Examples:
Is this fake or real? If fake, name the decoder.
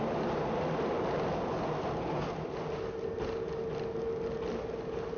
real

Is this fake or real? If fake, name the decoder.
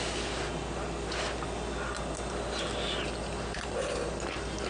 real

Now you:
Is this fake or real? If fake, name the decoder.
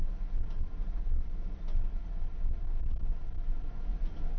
real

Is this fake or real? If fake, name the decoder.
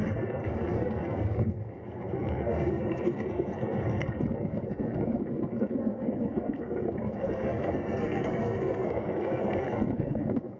fake, codec, SNAC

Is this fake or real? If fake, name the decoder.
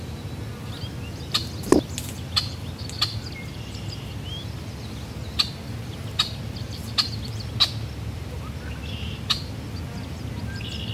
real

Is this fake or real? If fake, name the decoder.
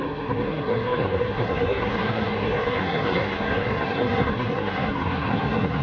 fake, codec, SNAC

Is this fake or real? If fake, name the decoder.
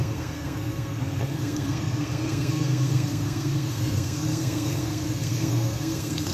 fake, codec, SNAC